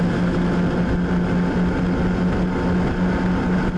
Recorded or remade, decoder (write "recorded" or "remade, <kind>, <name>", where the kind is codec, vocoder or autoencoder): recorded